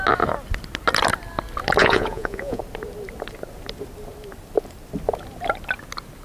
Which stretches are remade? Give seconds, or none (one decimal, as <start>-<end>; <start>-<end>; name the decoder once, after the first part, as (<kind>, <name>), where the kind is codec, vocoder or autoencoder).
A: 1.8-2.6 (vocoder, Vocos)